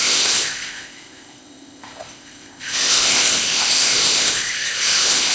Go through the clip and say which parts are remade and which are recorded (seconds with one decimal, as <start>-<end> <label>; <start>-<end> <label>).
0.0-5.3 remade